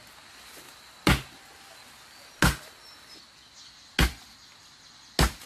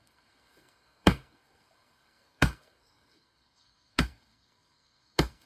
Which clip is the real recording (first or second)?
first